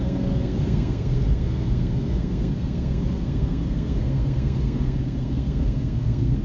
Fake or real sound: fake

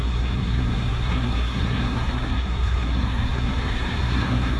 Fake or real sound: fake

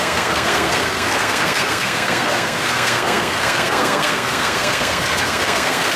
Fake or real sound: fake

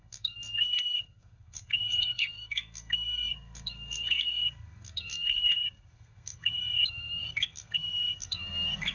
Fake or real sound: fake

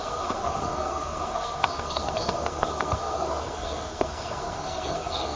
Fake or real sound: fake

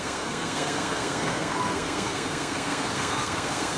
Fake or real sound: fake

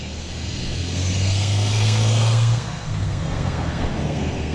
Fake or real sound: fake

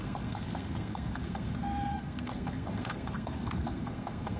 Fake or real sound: fake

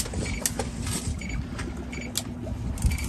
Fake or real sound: real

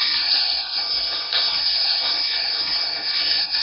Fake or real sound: fake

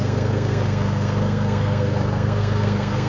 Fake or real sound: fake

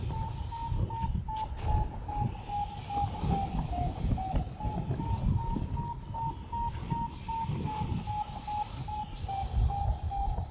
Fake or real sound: real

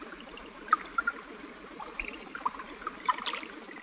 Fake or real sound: real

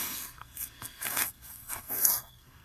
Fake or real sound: fake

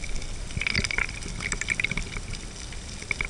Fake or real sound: real